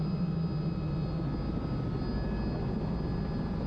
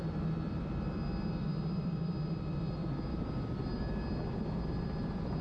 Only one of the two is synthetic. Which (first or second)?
second